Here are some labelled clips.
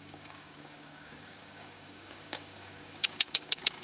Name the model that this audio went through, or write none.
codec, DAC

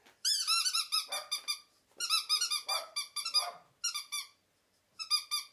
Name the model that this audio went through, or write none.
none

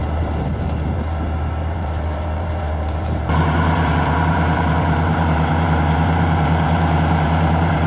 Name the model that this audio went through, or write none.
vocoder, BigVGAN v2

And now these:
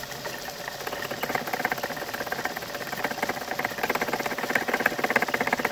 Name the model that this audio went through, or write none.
none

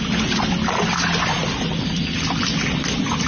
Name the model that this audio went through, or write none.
none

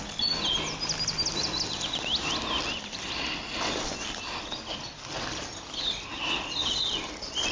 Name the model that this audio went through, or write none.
none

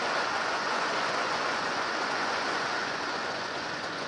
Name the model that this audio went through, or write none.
vocoder, Vocos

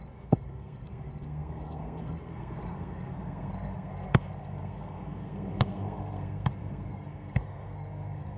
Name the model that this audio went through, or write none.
codec, SNAC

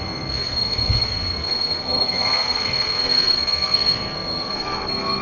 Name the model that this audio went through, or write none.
codec, SNAC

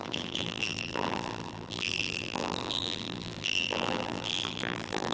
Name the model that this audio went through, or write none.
vocoder, BigVGAN v2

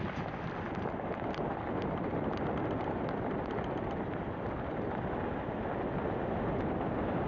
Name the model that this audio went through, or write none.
none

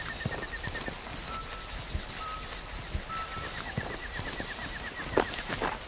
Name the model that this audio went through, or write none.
none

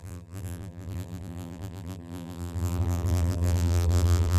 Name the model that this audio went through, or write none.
vocoder, BigVGAN v2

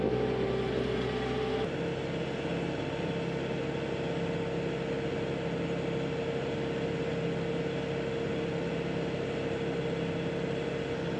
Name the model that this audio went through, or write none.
none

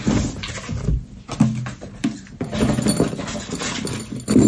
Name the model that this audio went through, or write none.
none